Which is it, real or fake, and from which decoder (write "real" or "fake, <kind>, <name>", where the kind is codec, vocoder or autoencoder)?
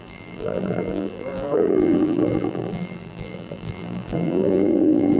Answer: fake, vocoder, BigVGAN v2